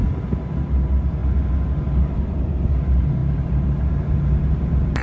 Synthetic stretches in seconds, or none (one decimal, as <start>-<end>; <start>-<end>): 3.2-3.9